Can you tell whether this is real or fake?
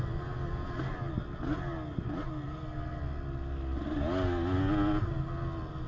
real